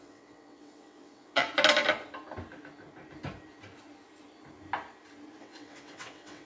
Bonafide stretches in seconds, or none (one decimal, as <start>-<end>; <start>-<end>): 1.5-5.4